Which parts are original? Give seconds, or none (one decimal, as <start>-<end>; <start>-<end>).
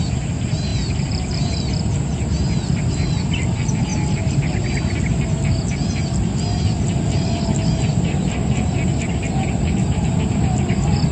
0.0-11.1